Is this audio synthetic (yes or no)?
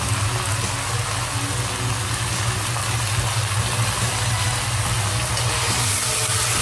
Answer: no